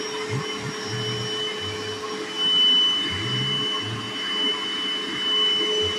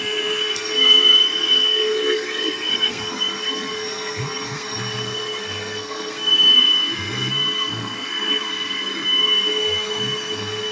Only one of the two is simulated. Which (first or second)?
second